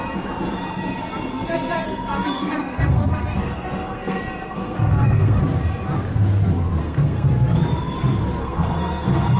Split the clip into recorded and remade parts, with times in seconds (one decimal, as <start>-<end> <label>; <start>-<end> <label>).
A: 0.0-1.3 recorded; 1.3-5.4 remade; 5.4-6.8 recorded; 6.8-7.3 remade; 7.3-8.4 recorded; 8.4-9.4 remade